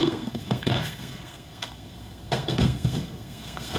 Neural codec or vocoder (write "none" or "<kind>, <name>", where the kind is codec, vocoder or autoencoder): codec, SNAC